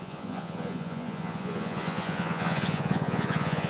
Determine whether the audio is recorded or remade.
remade